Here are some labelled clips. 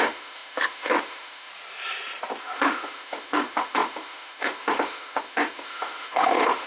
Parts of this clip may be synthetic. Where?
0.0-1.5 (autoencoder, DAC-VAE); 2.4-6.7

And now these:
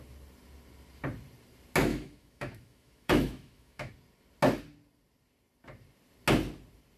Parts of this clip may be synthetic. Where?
1.9-3.9 (autoencoder, DAC-VAE)

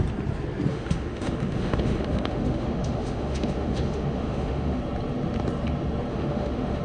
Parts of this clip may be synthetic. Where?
0.7-4.8 (autoencoder, DAC-VAE); 6.1-6.8

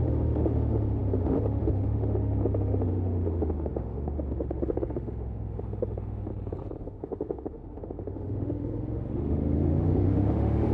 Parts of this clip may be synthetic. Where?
0.0-6.3 (autoencoder, DAC-VAE); 6.8-10.7